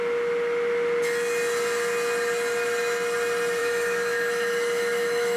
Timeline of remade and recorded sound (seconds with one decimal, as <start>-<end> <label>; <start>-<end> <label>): 0.0-3.6 recorded; 3.6-5.4 remade